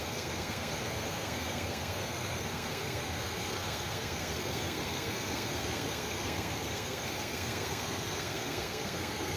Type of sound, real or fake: fake